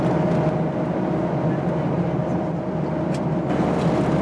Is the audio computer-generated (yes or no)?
no